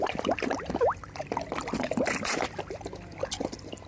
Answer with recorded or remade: remade